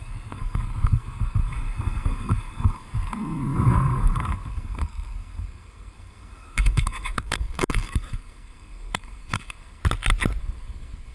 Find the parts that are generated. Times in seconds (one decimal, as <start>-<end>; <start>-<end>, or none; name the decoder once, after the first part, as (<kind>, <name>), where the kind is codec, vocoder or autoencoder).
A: 0.0-9.8 (codec, SNAC); 10.4-11.1